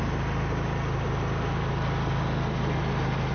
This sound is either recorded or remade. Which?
recorded